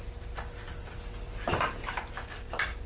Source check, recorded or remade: recorded